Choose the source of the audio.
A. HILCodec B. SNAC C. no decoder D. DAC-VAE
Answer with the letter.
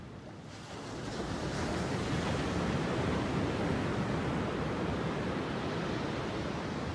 C